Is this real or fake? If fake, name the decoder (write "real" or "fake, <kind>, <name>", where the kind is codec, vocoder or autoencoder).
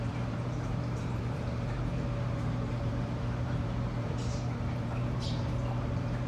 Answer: fake, vocoder, BigVGAN v2